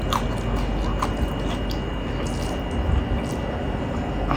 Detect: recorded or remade recorded